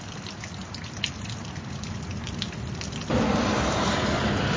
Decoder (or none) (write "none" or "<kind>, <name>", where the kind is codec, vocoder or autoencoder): none